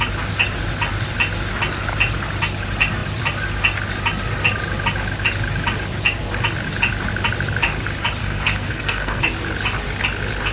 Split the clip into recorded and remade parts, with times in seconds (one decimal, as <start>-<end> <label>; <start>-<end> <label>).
0.0-8.2 recorded; 8.2-9.2 remade; 9.2-10.5 recorded